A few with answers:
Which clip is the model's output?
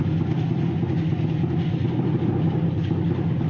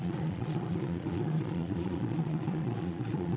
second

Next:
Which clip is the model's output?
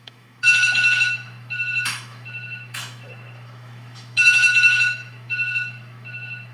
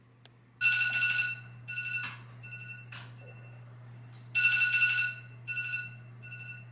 first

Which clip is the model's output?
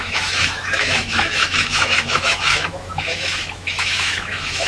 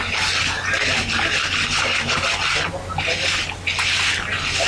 first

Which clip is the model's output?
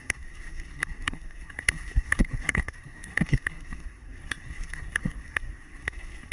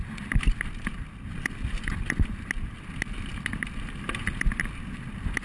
first